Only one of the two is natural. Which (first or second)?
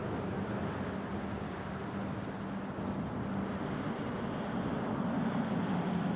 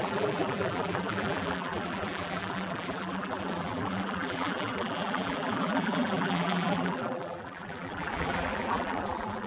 first